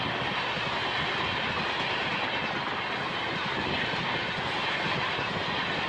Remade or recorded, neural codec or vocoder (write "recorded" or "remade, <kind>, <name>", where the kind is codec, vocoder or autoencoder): recorded